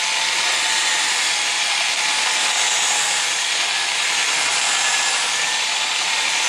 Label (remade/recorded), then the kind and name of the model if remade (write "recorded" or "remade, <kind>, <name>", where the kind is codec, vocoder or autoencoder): remade, vocoder, BigVGAN v2